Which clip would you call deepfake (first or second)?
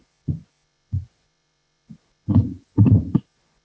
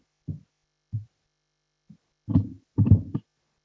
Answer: first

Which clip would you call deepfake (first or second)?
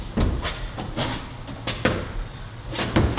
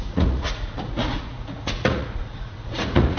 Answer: second